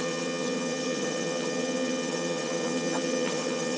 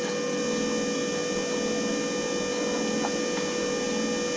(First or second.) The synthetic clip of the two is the first